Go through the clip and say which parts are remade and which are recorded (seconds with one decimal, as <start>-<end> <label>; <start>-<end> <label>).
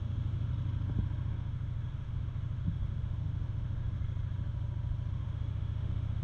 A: 0.0-0.5 remade; 0.5-1.3 recorded; 1.3-4.0 remade; 4.0-5.1 recorded; 5.1-6.2 remade